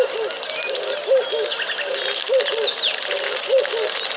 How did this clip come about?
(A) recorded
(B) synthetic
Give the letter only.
A